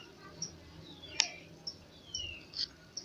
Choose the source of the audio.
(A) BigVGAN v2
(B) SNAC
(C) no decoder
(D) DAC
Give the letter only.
C